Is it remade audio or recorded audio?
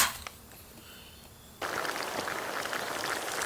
recorded